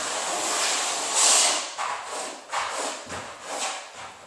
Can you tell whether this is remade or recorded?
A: recorded